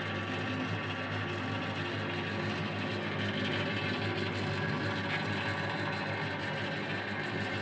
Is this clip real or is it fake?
real